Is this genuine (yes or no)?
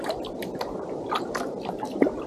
yes